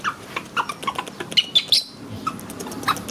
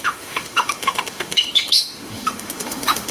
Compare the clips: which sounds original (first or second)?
first